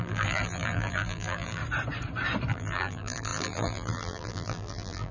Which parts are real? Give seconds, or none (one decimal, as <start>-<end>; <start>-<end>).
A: 1.6-2.5